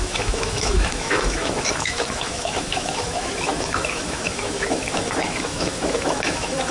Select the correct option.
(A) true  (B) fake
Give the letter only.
B